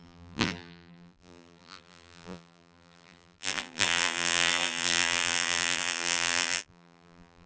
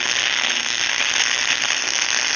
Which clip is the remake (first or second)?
first